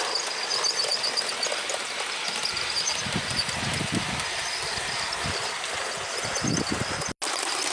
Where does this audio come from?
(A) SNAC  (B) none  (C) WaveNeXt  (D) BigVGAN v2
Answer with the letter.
B